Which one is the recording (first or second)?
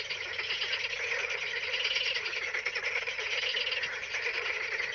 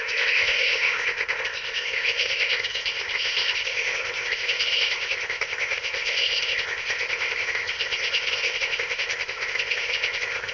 first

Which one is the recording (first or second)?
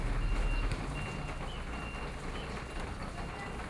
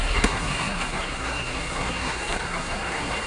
first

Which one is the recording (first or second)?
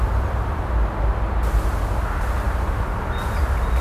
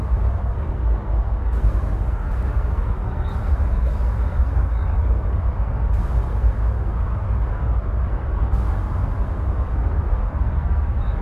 first